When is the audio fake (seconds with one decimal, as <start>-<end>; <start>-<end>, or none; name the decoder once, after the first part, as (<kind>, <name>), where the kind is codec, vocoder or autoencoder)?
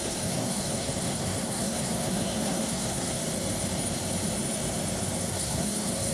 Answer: 0.0-3.2 (codec, SNAC); 5.2-6.1